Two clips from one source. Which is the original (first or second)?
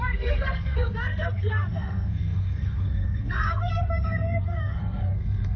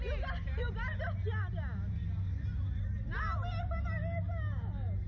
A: second